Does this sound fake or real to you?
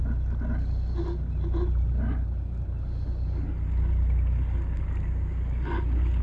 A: real